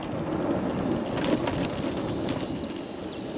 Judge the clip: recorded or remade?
recorded